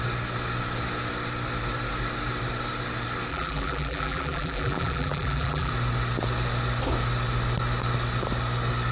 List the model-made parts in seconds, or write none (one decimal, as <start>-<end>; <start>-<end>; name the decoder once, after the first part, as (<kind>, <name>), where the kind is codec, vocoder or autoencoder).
3.3-5.7 (vocoder, BigVGAN v2)